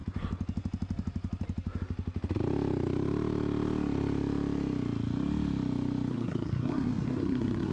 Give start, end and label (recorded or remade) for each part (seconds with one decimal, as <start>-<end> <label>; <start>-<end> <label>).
0.0-6.1 recorded; 6.1-7.7 remade